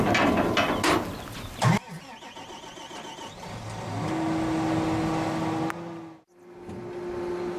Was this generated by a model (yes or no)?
no